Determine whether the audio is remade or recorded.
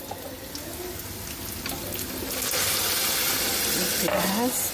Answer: recorded